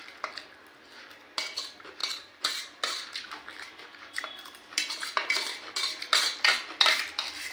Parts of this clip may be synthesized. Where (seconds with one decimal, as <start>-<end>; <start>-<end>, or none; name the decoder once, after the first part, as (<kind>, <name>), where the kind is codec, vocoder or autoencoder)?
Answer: 0.0-7.5 (vocoder, BigVGAN v2)